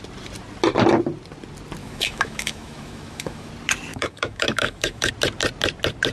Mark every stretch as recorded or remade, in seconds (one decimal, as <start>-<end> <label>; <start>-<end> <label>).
0.0-1.8 recorded; 1.8-3.5 remade; 3.5-3.9 recorded; 3.9-5.1 remade; 5.1-6.1 recorded